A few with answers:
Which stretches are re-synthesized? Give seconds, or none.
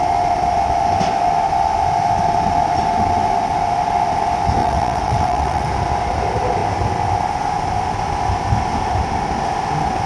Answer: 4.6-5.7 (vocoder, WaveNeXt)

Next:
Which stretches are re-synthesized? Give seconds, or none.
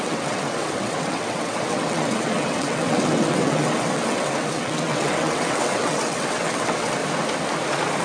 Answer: 0.0-7.0 (vocoder, WaveNeXt)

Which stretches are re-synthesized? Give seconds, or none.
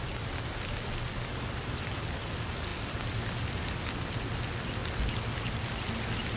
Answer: none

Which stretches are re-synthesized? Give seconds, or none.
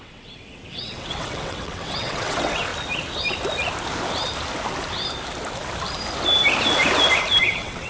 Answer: 0.0-2.7 (vocoder, WaveNeXt); 7.4-7.9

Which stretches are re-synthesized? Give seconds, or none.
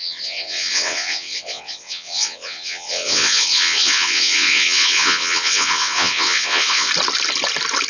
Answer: 0.0-6.9 (vocoder, WaveNeXt)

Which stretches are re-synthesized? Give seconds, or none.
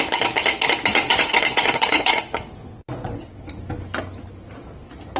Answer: 0.9-3.6 (vocoder, WaveNeXt)